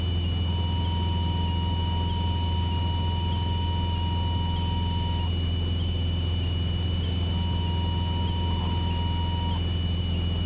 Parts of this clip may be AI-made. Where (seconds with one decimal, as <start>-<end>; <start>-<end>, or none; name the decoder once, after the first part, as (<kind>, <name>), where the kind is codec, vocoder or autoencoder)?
none